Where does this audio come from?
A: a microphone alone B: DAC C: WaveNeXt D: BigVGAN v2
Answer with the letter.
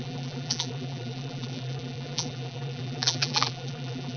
D